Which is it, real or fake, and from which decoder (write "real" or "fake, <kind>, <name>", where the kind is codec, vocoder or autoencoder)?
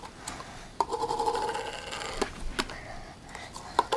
real